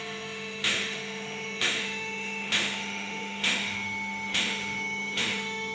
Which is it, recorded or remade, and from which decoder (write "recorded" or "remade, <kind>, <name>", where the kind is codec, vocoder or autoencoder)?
remade, autoencoder, DAC-VAE